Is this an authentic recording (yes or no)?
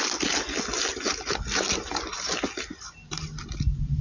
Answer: yes